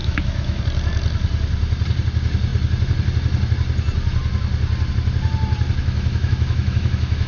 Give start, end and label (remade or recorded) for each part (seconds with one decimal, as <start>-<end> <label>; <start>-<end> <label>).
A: 0.0-0.6 remade; 0.6-5.8 recorded; 5.8-7.3 remade